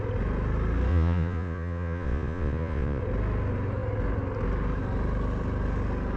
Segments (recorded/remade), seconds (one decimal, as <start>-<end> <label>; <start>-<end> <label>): 0.0-0.9 recorded; 0.9-3.0 remade; 3.0-6.2 recorded